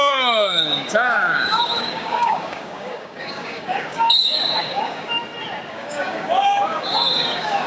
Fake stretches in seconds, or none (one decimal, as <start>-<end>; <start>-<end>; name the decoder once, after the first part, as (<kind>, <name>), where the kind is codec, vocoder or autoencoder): 0.0-5.2 (codec, DAC); 5.7-7.7